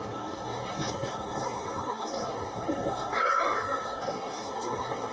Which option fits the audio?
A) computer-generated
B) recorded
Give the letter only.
A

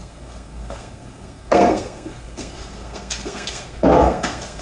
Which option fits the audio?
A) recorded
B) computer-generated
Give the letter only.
B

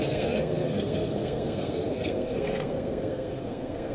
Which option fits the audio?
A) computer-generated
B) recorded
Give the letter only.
A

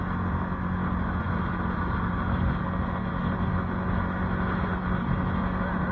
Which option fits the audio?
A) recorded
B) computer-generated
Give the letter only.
A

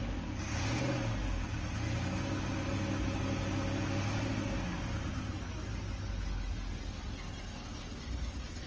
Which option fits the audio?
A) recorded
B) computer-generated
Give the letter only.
A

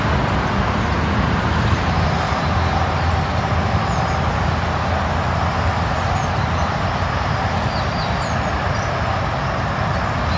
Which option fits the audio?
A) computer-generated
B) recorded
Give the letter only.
B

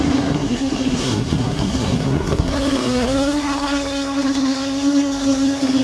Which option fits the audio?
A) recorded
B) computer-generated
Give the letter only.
B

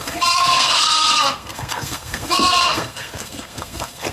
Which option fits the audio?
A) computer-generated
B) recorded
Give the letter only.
A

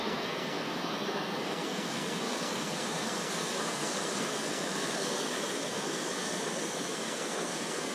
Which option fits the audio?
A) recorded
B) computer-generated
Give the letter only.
B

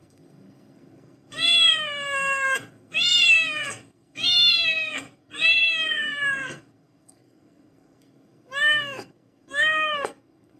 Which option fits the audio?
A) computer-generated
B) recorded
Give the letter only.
A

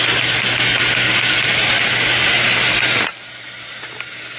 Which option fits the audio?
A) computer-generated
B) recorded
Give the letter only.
B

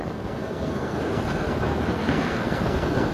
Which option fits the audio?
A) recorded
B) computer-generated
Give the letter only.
B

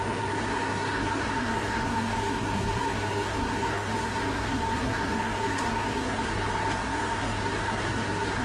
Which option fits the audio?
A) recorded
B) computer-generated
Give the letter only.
B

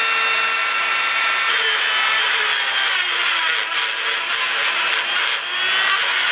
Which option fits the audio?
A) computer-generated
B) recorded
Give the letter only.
B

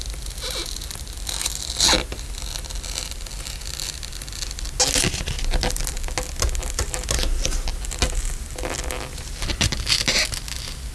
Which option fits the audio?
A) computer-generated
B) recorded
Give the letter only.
B